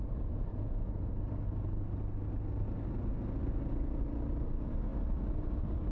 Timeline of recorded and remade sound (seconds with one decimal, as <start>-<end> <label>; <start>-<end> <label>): 0.0-0.5 recorded; 0.5-1.1 remade; 1.1-5.9 recorded

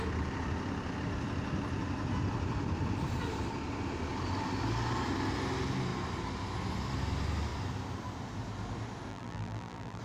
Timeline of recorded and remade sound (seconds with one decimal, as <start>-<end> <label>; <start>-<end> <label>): 0.0-9.1 recorded; 9.1-10.0 remade